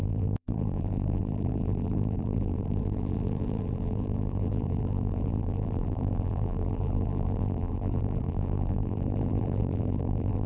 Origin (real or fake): fake